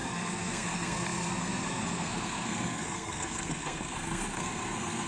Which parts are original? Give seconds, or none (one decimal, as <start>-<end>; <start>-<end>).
none

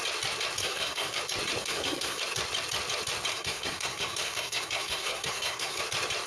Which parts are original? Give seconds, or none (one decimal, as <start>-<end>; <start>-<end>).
0.0-0.6; 1.2-1.6; 2.2-3.3; 5.8-6.3

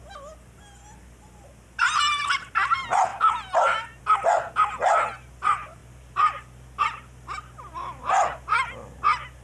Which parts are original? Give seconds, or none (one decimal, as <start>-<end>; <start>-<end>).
0.0-9.4

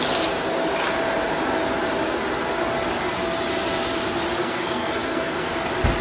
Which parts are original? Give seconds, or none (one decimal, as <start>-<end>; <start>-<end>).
0.0-4.4; 5.5-6.0